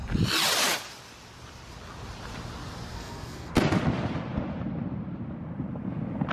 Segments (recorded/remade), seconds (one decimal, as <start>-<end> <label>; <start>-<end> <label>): 0.0-2.9 recorded; 2.9-3.5 remade; 3.5-6.3 recorded

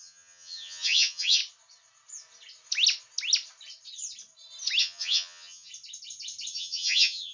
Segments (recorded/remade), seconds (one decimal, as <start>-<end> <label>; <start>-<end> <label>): 0.0-1.4 remade; 1.4-4.8 recorded; 4.8-5.7 remade; 5.7-6.5 recorded; 6.5-7.3 remade

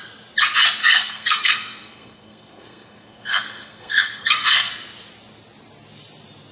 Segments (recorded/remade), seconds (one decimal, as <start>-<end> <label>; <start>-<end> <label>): 0.0-0.8 recorded; 0.8-4.7 remade; 4.7-6.5 recorded

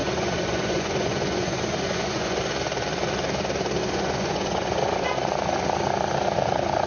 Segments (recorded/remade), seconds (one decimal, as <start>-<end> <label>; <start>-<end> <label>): 0.0-2.4 remade; 2.4-3.8 recorded; 3.8-5.1 remade; 5.1-6.9 recorded